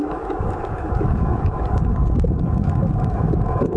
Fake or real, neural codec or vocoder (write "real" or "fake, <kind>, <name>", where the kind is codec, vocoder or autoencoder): fake, codec, DAC